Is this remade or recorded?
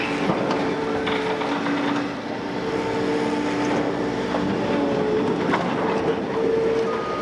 recorded